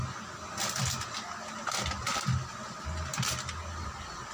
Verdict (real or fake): real